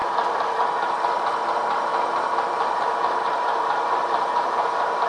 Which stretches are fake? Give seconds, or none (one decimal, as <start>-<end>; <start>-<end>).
0.0-0.6; 1.9-5.1